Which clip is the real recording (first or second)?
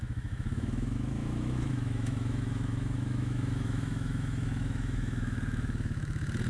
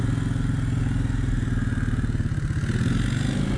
second